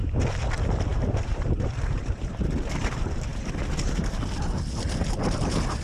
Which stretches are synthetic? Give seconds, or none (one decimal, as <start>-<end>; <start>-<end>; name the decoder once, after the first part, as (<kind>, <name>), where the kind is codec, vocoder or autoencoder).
0.9-2.2 (vocoder, BigVGAN v2)

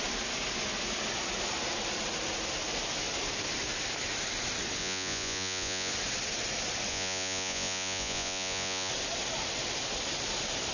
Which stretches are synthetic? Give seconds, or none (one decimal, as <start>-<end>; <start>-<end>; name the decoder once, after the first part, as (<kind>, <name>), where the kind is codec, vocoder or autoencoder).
4.8-5.9 (vocoder, Vocos); 6.9-8.9

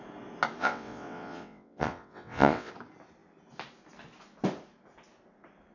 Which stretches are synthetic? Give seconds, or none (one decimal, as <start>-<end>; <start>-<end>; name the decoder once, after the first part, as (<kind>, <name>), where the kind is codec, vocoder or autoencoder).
0.6-2.7 (vocoder, WaveNeXt)

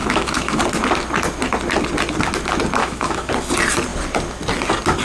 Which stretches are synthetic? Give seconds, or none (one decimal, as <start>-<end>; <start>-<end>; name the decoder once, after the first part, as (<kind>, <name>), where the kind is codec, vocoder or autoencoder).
0.0-0.6 (autoencoder, DAC-VAE); 2.8-3.3

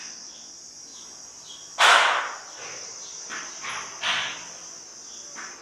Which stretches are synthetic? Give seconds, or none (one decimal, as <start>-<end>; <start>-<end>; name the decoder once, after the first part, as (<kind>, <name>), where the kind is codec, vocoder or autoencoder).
0.9-3.7 (vocoder, BigVGAN v2)

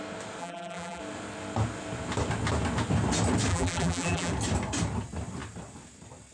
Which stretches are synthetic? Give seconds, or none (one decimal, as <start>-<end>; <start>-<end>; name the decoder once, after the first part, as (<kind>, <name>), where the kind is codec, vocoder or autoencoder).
0.4-1.0 (vocoder, BigVGAN v2); 3.5-4.3

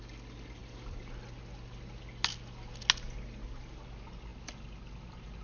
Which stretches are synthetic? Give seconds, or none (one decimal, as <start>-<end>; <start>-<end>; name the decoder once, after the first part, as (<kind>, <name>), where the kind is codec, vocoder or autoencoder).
none

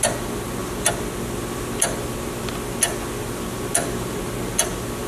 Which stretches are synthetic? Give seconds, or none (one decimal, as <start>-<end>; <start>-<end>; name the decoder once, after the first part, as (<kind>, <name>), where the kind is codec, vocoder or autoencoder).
none